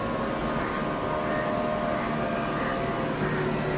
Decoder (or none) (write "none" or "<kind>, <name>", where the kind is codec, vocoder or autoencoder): none